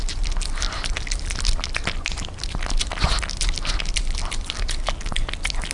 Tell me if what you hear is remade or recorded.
recorded